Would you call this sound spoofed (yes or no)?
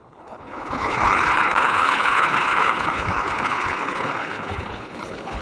yes